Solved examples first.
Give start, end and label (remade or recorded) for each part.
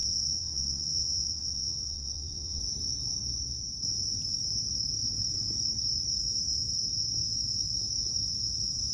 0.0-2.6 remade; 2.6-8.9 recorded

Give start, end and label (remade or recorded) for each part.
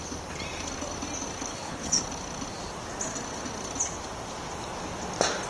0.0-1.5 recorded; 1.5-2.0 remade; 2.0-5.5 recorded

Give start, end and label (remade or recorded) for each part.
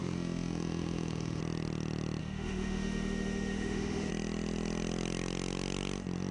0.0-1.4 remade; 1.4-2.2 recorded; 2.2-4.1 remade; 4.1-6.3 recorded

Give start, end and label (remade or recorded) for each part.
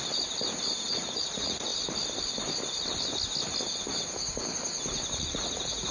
0.0-0.9 recorded; 0.9-1.7 remade; 1.7-5.2 recorded; 5.2-5.9 remade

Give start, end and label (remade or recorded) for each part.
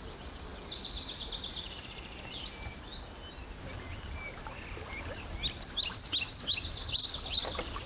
0.0-7.9 recorded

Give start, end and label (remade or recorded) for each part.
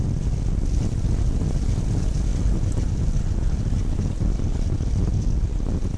0.0-6.0 recorded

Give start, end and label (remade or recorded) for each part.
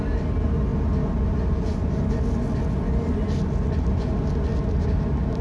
0.0-5.4 recorded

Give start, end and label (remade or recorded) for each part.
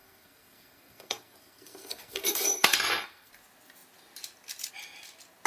0.0-3.3 remade; 3.3-5.5 recorded